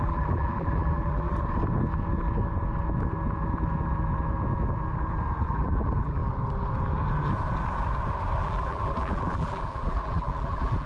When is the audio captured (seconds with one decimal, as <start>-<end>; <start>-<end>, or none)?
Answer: 1.3-5.4; 6.2-8.4

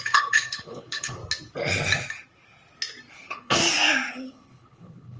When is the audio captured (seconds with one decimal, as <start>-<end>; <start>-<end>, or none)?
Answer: 1.2-3.1; 3.6-4.1

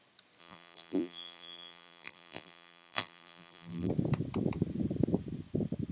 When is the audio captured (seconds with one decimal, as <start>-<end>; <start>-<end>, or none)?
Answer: 0.0-0.4; 3.9-5.9

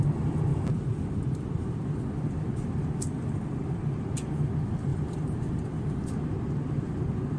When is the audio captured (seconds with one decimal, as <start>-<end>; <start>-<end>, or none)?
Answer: 0.0-0.5; 3.8-4.9; 6.1-7.4

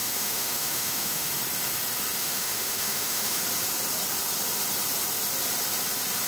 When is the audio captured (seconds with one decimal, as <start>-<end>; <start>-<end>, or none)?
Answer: 1.3-2.2; 3.4-6.3

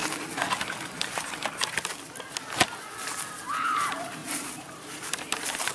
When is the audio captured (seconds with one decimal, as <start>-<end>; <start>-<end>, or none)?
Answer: 0.0-3.4

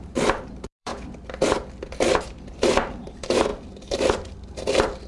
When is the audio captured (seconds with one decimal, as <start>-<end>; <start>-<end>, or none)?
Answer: 0.9-2.2; 3.5-5.1

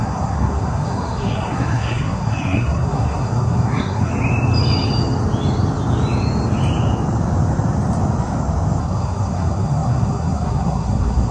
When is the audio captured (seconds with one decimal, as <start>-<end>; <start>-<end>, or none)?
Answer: 4.1-8.8